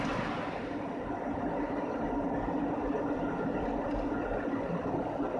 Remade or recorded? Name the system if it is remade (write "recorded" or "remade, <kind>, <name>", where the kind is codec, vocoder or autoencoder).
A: recorded